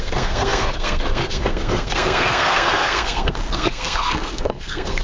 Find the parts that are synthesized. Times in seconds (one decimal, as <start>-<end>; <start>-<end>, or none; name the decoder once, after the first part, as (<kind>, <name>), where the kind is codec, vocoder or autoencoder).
0.0-5.0 (codec, SNAC)